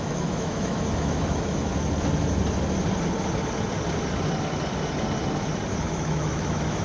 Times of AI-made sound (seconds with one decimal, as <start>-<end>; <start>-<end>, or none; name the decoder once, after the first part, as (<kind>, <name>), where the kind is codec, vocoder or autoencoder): 0.0-1.7 (autoencoder, DAC-VAE); 5.8-6.8